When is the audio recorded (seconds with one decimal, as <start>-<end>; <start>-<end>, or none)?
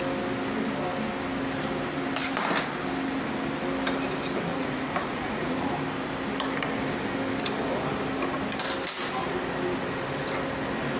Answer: 0.0-4.5; 5.7-11.0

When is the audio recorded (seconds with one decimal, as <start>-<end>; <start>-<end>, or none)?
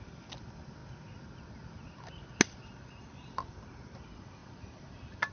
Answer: 0.8-3.7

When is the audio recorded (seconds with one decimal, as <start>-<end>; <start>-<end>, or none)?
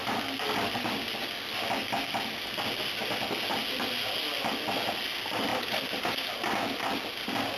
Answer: 0.0-5.5; 6.1-7.6